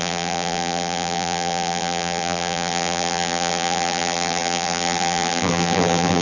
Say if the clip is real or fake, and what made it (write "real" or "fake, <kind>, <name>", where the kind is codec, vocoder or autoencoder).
fake, vocoder, BigVGAN v2